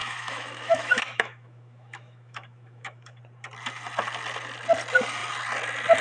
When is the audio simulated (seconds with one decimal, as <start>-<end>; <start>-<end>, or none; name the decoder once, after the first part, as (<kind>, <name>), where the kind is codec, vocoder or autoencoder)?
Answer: 0.0-3.2 (autoencoder, DAC-VAE)